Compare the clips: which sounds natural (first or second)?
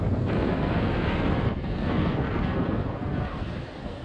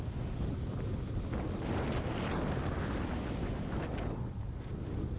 second